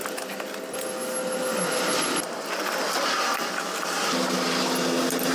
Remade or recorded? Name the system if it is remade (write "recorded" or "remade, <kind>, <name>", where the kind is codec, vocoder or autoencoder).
recorded